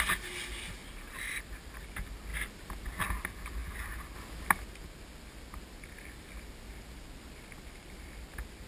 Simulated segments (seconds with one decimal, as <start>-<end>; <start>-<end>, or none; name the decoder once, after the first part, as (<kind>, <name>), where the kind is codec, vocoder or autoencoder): none